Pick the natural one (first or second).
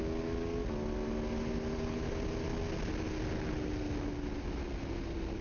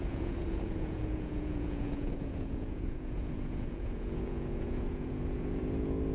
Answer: first